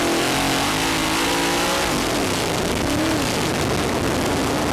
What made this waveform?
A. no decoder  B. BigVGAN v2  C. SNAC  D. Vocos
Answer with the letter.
A